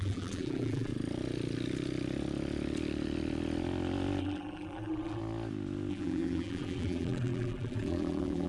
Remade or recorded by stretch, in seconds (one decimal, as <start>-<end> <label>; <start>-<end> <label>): 0.0-0.9 remade; 0.9-4.2 recorded; 4.2-5.2 remade; 5.2-5.9 recorded; 5.9-8.5 remade